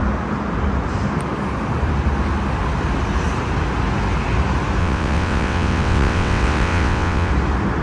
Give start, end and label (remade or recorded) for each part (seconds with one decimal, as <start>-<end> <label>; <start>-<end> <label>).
0.0-4.8 recorded; 4.8-7.3 remade; 7.3-7.8 recorded